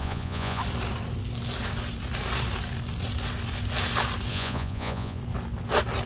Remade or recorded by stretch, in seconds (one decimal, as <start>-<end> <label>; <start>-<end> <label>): 0.0-0.6 remade; 0.6-4.3 recorded; 4.3-5.2 remade; 5.2-6.1 recorded